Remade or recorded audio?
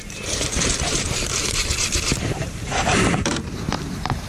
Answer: remade